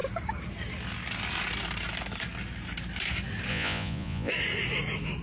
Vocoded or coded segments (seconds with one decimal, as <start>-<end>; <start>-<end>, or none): 3.5-4.3